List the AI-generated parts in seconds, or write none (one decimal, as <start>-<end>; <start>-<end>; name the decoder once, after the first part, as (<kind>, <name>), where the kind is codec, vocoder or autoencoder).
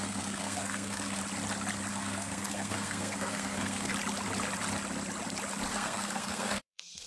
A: 0.0-1.2 (codec, SNAC); 1.9-3.9; 5.7-7.1